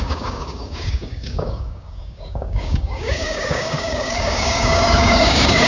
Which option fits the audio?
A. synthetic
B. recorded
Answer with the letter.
A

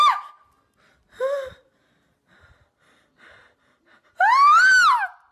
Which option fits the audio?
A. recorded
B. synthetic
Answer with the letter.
A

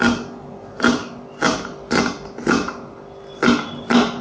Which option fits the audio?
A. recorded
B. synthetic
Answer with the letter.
A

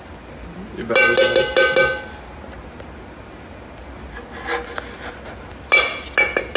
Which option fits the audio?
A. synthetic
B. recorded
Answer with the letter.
B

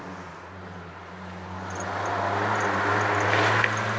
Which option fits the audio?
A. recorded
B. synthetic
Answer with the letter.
A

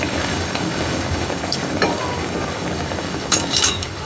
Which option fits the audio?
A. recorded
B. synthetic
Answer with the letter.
B